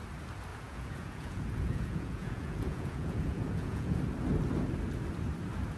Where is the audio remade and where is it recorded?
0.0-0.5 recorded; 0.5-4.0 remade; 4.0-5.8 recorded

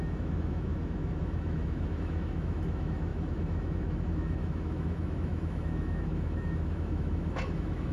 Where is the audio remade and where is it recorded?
0.0-7.9 remade

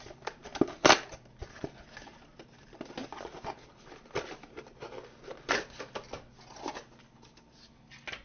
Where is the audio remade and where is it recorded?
0.0-8.2 recorded